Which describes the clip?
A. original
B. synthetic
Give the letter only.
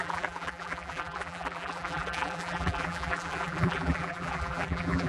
B